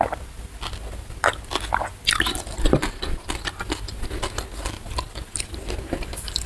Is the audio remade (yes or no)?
no